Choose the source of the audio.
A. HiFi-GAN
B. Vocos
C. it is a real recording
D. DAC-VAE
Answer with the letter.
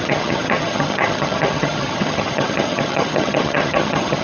A